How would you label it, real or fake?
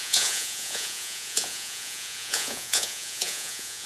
fake